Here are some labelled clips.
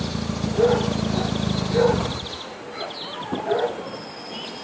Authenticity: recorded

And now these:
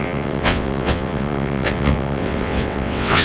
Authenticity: remade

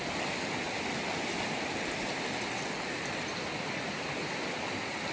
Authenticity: recorded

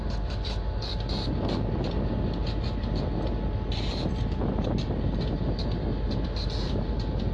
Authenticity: recorded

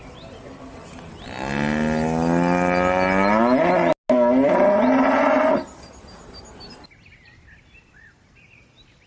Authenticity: recorded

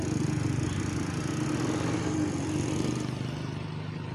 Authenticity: recorded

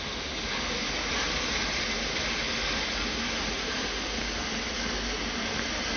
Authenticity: recorded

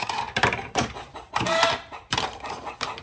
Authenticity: remade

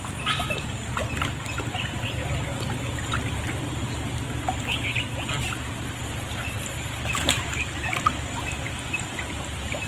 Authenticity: recorded